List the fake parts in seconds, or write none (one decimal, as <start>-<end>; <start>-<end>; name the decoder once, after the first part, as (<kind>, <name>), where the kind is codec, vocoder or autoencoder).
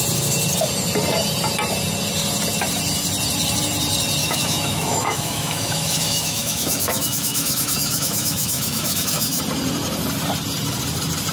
4.2-9.4 (autoencoder, DAC-VAE)